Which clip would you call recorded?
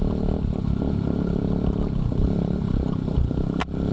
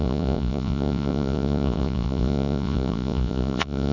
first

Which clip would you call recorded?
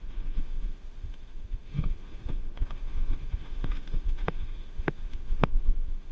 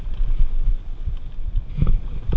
second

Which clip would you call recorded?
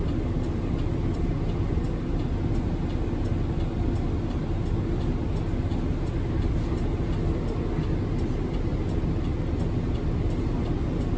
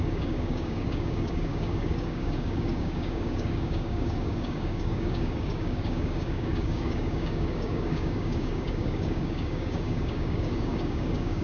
first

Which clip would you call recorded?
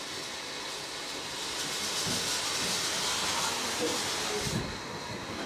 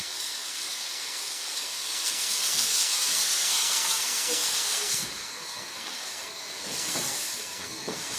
first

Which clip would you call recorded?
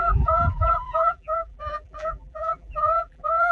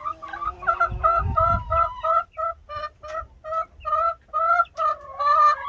second